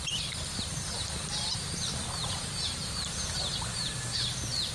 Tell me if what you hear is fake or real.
fake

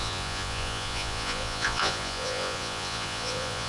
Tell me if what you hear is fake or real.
fake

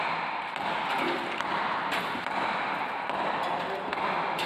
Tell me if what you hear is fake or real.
real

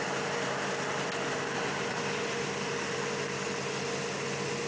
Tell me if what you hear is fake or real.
real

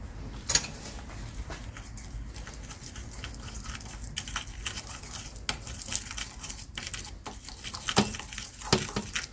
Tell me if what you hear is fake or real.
real